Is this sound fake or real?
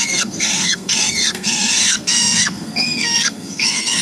fake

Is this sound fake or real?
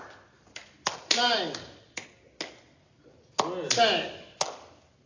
real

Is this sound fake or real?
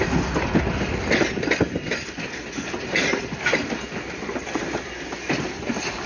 real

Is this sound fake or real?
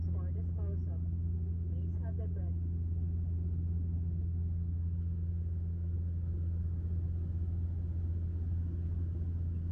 real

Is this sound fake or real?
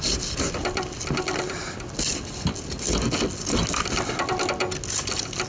real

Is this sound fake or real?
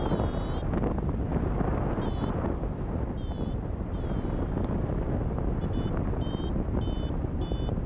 real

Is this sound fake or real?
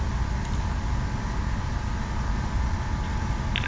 real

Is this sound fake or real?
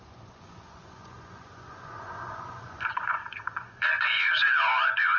fake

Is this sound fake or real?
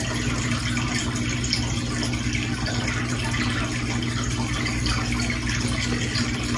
real